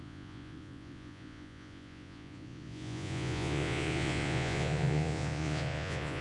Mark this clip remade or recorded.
remade